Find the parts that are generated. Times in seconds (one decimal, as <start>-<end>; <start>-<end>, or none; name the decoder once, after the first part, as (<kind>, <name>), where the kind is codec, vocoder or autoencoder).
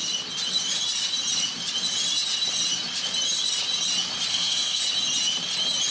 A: 4.3-4.8 (codec, SNAC)